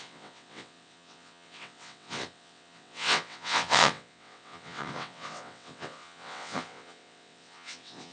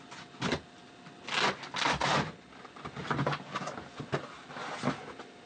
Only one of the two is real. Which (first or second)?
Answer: second